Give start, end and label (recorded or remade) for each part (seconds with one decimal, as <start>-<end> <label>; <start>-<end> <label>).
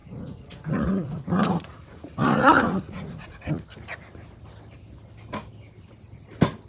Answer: 0.0-3.5 remade; 3.5-6.7 recorded